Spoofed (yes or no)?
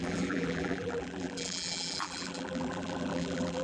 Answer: yes